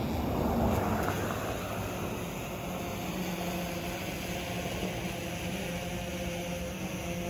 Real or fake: real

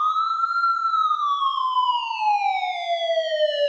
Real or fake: real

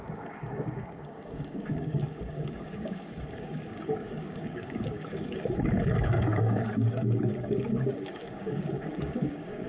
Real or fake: fake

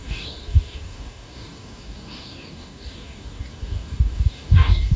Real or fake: fake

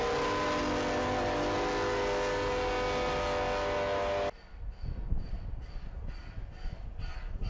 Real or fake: real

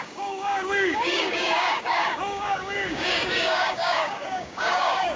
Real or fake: fake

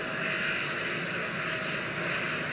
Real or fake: real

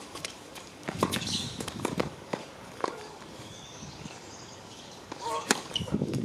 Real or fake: fake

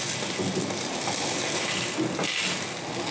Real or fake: real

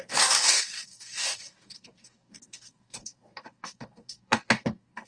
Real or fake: fake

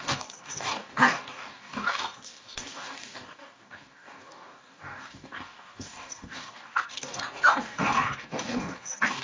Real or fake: fake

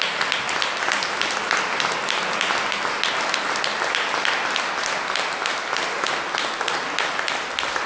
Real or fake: real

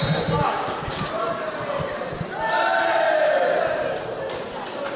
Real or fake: real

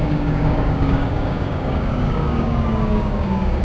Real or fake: fake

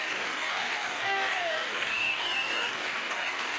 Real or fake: fake